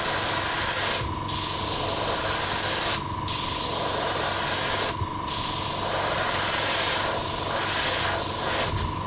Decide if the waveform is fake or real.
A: real